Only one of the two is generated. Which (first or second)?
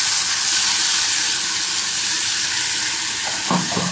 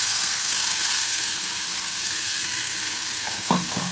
second